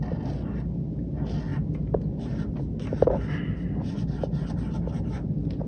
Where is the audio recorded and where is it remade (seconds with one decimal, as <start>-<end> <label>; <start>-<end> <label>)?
0.0-5.7 recorded